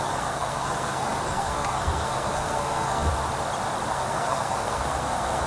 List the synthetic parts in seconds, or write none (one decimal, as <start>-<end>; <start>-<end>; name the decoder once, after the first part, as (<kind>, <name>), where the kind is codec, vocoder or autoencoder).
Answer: 0.0-3.1 (codec, SNAC); 3.9-5.5